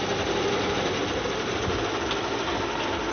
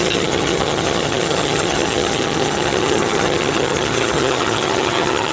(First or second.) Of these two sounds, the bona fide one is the first